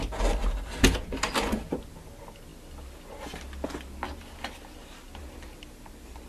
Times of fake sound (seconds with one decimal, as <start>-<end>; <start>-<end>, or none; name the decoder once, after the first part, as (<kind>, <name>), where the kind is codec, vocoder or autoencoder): none